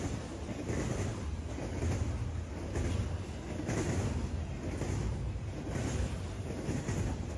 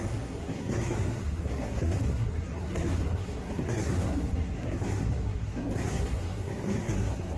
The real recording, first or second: first